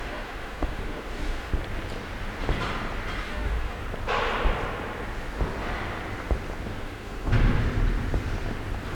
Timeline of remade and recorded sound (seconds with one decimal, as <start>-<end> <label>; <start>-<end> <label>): 0.0-1.5 remade; 1.5-3.2 recorded; 3.2-3.8 remade; 3.8-6.8 recorded; 6.8-7.6 remade; 7.6-8.9 recorded